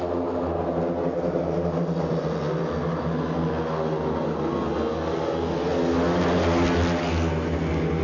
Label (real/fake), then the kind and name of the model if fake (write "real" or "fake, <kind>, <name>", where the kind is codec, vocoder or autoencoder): real